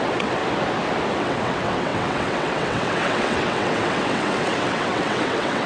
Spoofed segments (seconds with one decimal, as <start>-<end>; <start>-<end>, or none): 0.0-0.4; 1.2-5.7